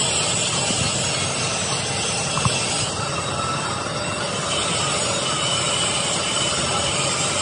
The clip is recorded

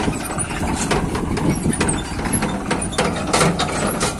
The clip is recorded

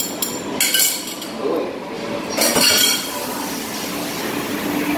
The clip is recorded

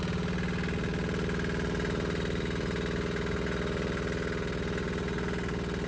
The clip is recorded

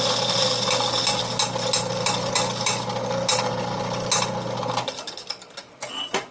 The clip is recorded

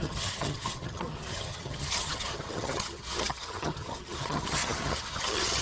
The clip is remade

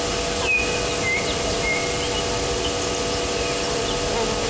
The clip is recorded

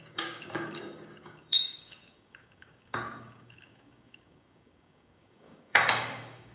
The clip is remade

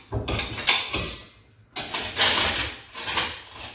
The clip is recorded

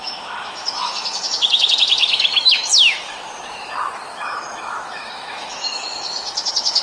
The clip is remade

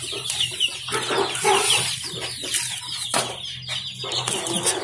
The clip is recorded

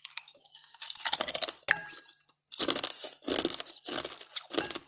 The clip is recorded